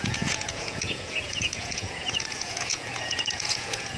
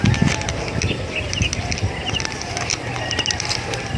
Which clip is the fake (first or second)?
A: first